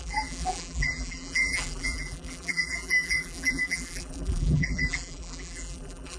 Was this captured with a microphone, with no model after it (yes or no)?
no